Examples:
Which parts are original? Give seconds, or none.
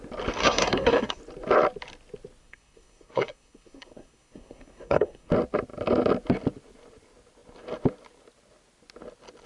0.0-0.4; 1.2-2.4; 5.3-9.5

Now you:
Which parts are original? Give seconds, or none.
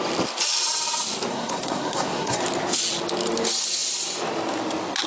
0.0-1.3; 2.4-5.1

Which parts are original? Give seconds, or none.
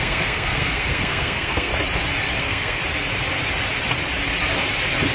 1.7-2.4; 2.8-5.1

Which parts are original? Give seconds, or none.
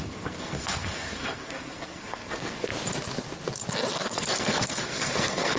2.7-3.9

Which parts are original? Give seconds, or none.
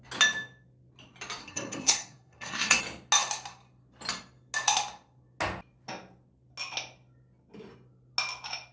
0.0-1.4; 2.8-8.7